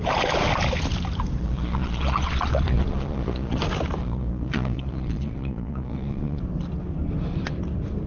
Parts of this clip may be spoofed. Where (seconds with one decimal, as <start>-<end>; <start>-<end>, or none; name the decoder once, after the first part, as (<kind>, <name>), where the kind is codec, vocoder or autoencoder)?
1.4-3.6 (vocoder, Vocos); 4.0-6.4